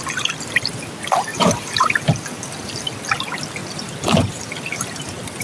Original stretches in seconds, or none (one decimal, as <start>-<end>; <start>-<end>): 0.0-1.3; 1.9-5.4